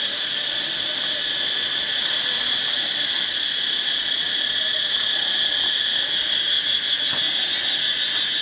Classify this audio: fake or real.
real